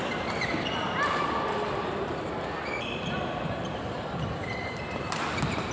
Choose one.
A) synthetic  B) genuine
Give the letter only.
B